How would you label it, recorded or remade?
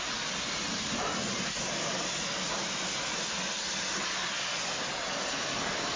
recorded